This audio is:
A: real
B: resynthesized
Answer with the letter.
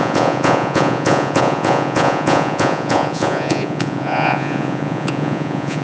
B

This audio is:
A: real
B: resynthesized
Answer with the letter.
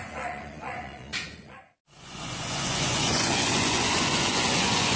B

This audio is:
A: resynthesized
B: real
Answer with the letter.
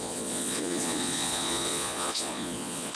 A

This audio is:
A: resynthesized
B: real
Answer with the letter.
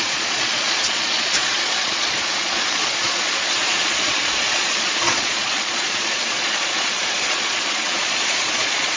A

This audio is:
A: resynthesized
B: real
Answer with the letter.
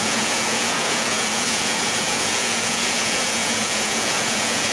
A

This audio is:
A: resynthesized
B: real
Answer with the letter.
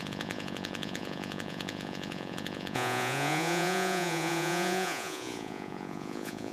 A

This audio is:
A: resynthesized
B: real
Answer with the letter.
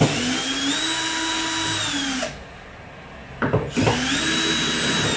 B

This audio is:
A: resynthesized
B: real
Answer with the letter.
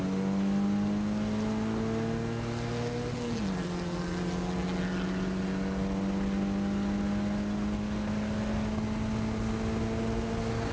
B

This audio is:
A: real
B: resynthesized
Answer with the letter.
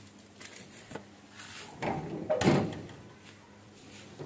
A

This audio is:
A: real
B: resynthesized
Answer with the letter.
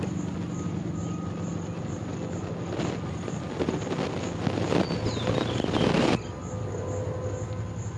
A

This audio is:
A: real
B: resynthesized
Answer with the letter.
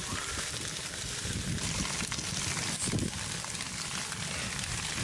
A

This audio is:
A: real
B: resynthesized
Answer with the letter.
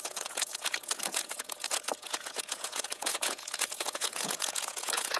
B